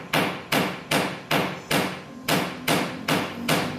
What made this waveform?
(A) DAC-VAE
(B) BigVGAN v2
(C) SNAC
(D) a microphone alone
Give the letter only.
D